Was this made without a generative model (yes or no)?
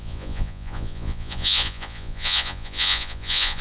no